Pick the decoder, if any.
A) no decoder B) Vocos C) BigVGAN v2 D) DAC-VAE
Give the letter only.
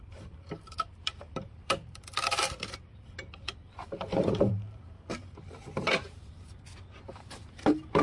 C